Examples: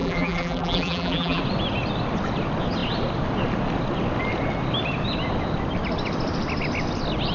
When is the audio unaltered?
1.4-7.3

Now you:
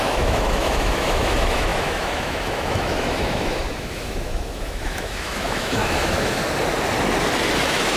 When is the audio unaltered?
6.4-7.6